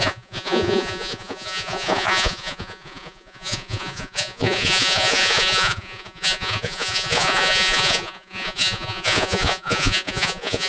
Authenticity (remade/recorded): remade